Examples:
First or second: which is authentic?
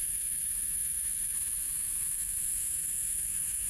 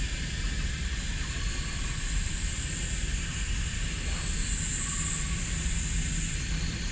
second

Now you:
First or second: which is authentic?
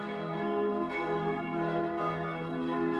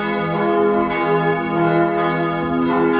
second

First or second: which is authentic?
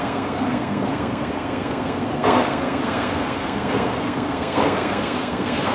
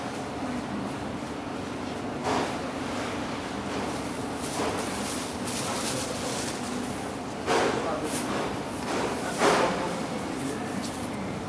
second